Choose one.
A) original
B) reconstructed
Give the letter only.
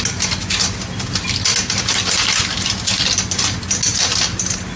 A